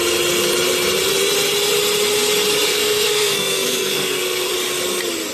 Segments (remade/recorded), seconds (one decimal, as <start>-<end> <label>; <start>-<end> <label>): 0.0-2.7 recorded; 2.7-4.5 remade; 4.5-5.3 recorded